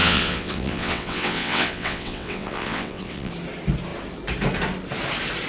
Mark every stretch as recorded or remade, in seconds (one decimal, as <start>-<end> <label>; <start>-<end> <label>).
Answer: 0.0-3.3 remade; 3.3-5.5 recorded